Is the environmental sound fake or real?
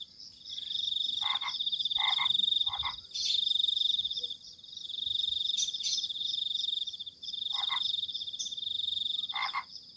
real